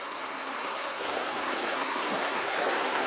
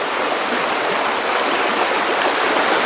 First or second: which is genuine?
second